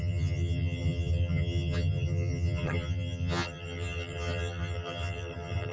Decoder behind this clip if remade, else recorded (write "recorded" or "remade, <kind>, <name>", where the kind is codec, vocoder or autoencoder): remade, vocoder, HiFi-GAN